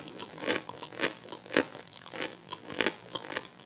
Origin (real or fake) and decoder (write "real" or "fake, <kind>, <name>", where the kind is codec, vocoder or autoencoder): fake, vocoder, BigVGAN v2